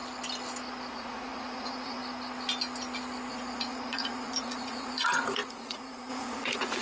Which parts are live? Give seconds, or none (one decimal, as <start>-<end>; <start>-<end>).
0.0-0.9; 2.0-3.3